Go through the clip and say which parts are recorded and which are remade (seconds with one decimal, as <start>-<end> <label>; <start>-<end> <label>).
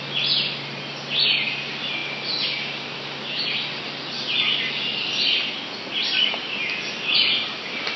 0.0-8.0 recorded